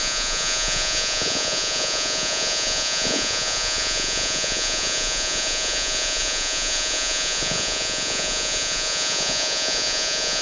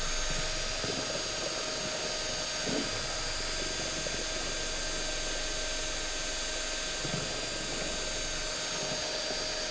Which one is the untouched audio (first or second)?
second